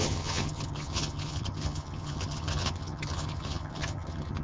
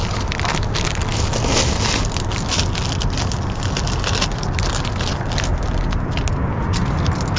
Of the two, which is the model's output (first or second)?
first